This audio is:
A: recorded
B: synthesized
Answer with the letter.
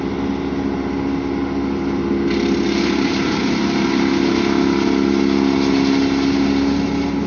A